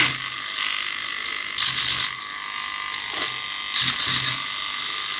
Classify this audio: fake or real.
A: real